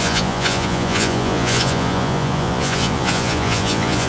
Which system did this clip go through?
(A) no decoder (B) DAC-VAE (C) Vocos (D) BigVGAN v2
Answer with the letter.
C